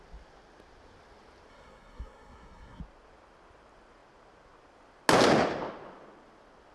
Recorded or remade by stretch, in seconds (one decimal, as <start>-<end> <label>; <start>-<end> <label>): 0.0-1.5 recorded; 1.5-2.8 remade; 2.8-6.7 recorded